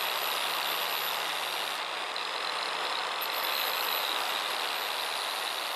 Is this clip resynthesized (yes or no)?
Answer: no